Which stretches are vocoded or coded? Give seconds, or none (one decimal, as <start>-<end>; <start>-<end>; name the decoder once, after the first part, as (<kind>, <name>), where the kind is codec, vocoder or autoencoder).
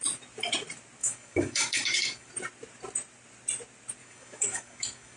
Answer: 1.0-2.3 (codec, DAC); 4.0-5.2